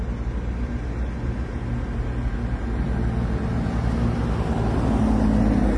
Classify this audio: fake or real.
real